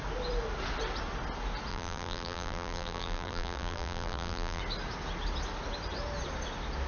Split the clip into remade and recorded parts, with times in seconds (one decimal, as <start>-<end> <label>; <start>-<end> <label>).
0.0-1.7 recorded; 1.7-4.6 remade; 4.6-6.9 recorded